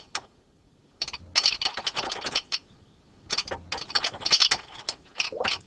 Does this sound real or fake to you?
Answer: real